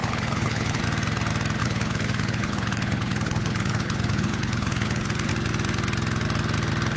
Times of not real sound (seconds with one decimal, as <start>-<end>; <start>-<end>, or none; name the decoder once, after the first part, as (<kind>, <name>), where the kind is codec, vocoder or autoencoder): 0.0-0.8 (codec, HILCodec); 1.6-5.3